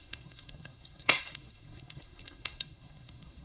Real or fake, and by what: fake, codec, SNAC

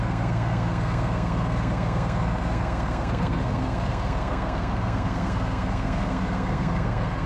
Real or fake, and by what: fake, codec, SNAC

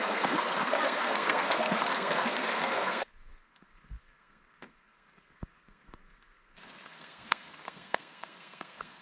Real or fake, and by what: fake, codec, SNAC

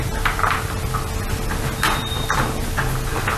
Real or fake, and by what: real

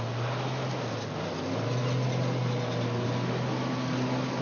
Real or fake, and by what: real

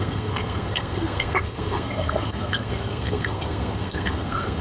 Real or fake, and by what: fake, codec, SNAC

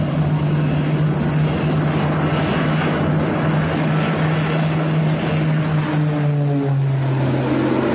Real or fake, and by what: real